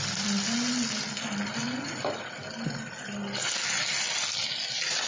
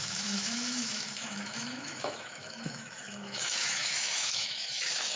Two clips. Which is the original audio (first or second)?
first